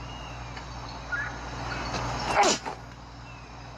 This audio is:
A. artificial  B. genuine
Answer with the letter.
B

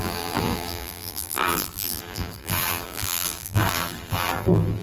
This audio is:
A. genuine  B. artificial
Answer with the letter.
B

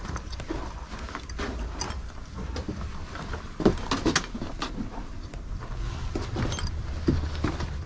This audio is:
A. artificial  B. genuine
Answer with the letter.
B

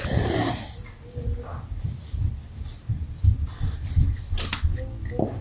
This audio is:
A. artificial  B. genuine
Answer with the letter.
B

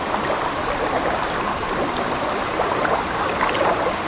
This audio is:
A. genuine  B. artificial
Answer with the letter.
A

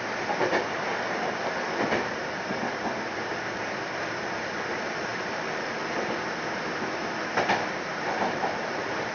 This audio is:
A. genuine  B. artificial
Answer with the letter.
B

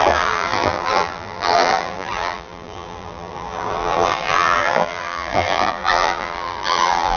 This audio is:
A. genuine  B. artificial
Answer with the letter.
B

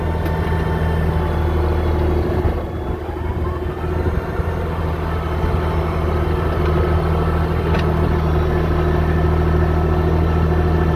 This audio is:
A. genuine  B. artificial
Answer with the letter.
A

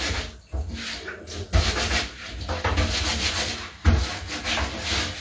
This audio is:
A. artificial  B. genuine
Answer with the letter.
B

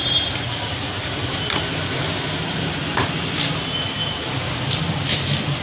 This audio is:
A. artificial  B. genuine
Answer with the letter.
A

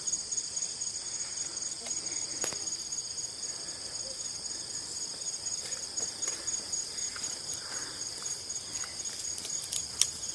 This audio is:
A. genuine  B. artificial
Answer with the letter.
A